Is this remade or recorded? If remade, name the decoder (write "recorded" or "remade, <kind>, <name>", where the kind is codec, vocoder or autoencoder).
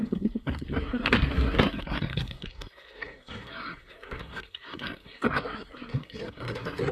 remade, codec, SNAC